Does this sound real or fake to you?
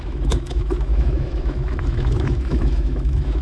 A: fake